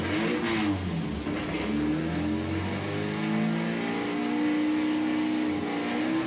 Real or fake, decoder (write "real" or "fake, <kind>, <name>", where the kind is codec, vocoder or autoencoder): real